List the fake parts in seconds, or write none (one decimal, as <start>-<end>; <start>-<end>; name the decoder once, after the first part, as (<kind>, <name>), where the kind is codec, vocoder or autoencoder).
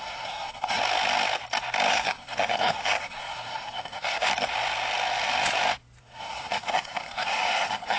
0.0-0.8 (codec, SNAC); 1.9-4.3; 6.0-8.0